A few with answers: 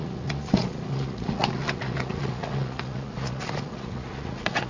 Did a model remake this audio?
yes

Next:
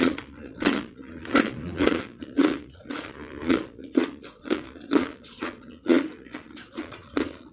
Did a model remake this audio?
yes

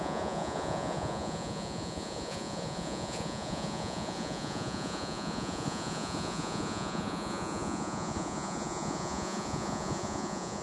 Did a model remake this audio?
yes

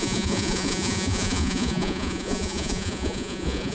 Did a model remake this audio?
yes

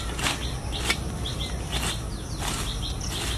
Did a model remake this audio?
no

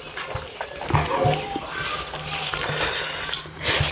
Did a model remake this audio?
no